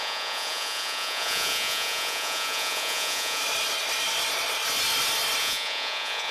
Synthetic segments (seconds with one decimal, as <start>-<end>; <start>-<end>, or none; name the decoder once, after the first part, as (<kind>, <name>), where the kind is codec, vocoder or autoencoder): 0.0-3.4 (vocoder, Vocos); 5.4-6.3